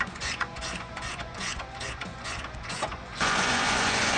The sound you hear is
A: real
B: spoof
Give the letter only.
B